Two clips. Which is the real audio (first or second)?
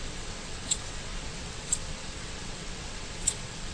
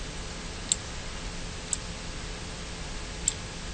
second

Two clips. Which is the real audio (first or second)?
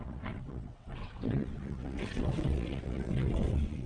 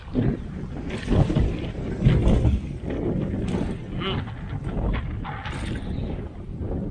second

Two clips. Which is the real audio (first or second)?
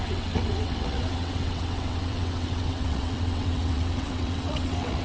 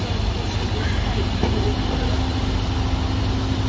second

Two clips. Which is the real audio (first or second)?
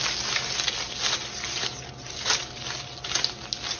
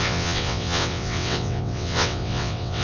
first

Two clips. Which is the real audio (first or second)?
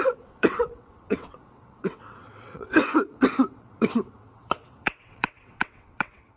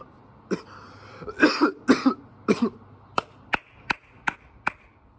second